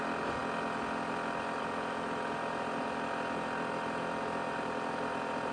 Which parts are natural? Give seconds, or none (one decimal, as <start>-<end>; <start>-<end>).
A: 0.0-5.5